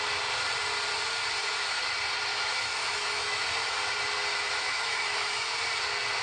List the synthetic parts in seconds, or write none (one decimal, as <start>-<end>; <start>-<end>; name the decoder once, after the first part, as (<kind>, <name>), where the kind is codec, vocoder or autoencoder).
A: 1.4-1.9 (autoencoder, DAC-VAE); 2.3-3.8; 4.3-5.5